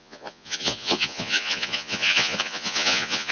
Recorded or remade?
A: remade